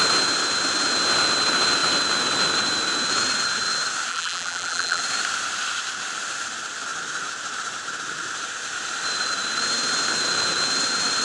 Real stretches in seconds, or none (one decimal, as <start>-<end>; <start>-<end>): 0.0-4.1; 5.0-11.2